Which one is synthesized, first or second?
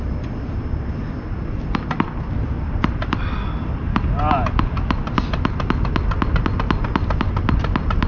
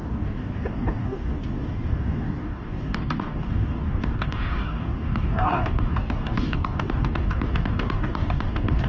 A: second